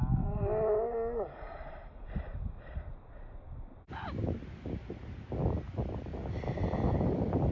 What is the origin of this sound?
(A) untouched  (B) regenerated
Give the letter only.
A